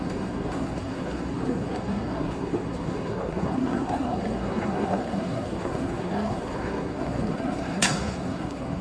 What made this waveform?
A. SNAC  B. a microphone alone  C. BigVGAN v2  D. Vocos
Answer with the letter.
A